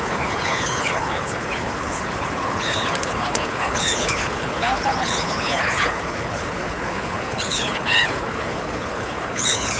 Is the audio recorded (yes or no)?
no